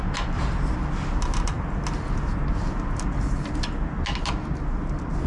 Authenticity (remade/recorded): recorded